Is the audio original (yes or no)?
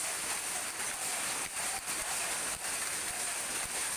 yes